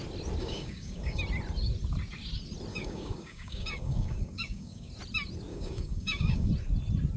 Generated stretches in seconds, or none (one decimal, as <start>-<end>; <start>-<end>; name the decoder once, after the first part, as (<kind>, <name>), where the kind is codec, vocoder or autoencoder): 0.4-1.2 (codec, DAC); 2.7-4.9; 5.5-6.5